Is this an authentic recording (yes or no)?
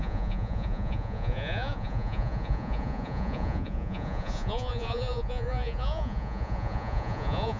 no